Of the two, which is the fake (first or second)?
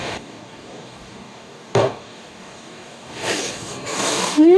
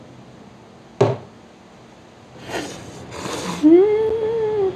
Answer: first